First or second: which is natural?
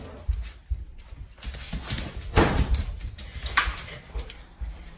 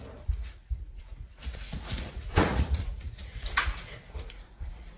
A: first